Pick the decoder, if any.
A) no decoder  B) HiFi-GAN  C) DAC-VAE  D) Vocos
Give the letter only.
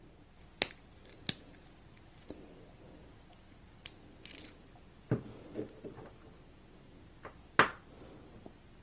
A